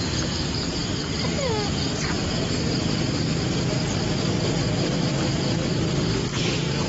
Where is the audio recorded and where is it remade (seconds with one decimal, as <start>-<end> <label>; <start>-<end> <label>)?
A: 0.0-6.9 recorded